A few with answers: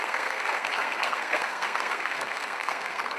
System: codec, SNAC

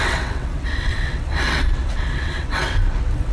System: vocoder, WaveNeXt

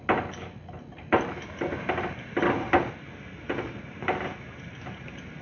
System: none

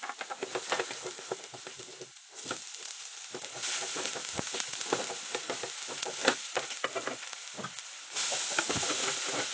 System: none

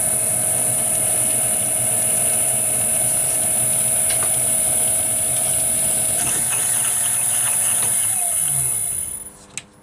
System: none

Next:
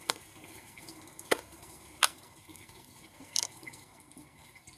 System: codec, SNAC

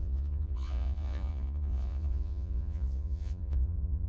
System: vocoder, Vocos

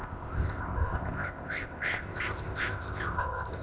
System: codec, ZipCodec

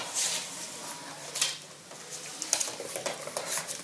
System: none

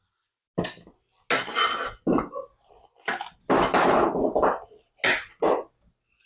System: none